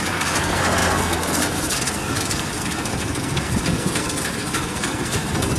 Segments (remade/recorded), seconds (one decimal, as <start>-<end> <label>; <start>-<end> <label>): 0.0-5.6 remade